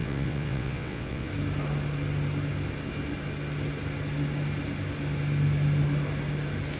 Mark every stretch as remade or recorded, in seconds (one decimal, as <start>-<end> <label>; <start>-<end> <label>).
0.0-1.3 remade; 1.3-6.8 recorded